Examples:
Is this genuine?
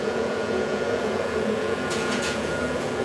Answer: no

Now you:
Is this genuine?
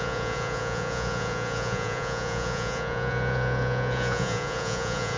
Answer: no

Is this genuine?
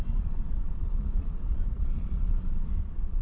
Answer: no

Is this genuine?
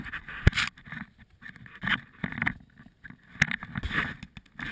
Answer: yes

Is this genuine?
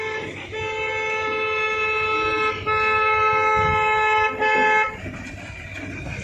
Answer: yes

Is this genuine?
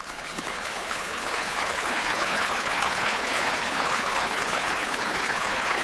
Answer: no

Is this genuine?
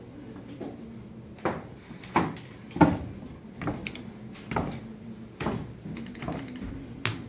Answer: yes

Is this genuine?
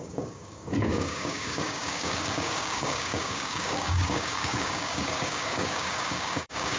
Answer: no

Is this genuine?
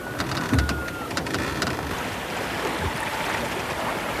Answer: yes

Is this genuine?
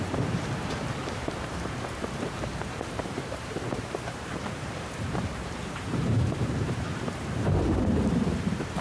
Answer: no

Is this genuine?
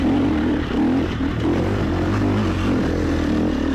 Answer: yes